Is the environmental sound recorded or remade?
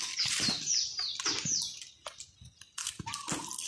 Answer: recorded